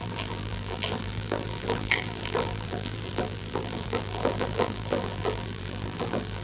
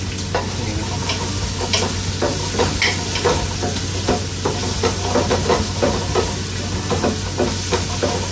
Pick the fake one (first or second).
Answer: first